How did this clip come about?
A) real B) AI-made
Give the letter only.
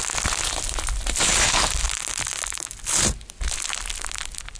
A